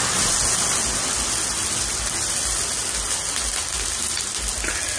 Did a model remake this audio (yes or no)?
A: no